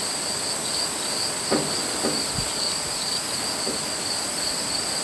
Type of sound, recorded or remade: recorded